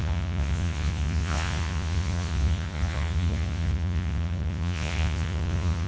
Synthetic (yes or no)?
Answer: yes